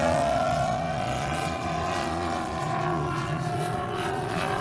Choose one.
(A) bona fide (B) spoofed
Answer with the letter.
B